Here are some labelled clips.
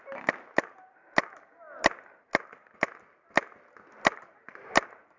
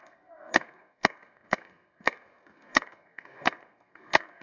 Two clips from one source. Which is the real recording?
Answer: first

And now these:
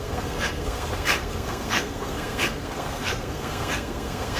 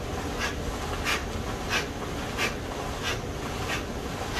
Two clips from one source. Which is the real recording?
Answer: second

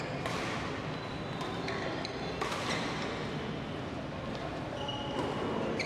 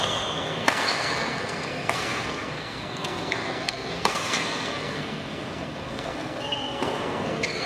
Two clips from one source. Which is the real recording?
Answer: first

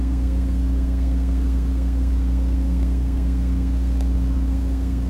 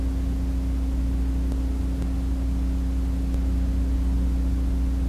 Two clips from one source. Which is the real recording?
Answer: second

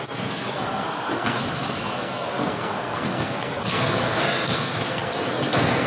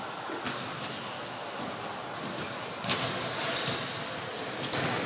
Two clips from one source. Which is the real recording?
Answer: second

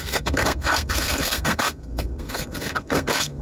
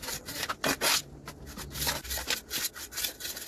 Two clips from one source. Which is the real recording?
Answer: second